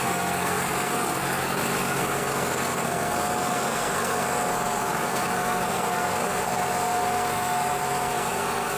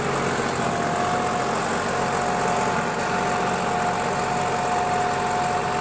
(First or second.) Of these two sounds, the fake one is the first